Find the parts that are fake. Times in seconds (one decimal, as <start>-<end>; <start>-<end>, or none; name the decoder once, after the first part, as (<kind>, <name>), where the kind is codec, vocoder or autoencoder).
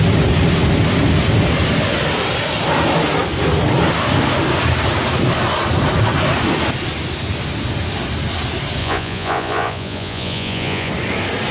8.8-10.9 (vocoder, Vocos)